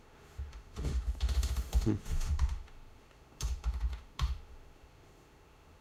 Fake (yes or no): yes